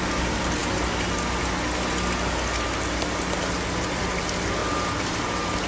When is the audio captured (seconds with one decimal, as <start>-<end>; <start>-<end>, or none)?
0.0-4.6; 5.2-5.7